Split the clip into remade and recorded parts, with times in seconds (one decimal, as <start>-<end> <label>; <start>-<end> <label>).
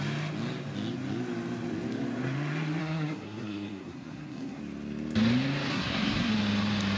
0.0-2.8 recorded; 2.8-4.6 remade; 4.6-5.7 recorded; 5.7-6.3 remade; 6.3-7.0 recorded